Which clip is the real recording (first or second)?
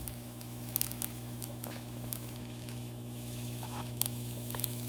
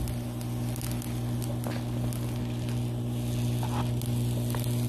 second